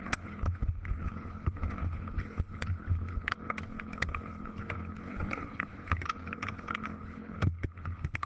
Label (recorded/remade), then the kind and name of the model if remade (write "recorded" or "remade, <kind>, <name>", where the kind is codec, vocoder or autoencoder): remade, codec, HILCodec